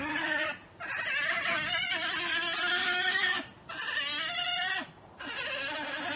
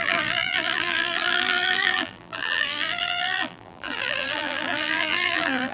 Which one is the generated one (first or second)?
second